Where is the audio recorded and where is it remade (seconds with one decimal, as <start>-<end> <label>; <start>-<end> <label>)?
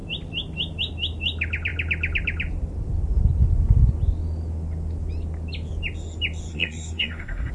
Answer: 0.0-6.5 recorded; 6.5-7.5 remade